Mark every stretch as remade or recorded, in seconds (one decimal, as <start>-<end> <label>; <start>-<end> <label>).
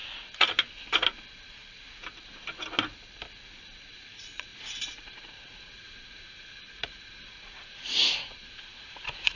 0.0-3.6 recorded; 3.6-9.4 remade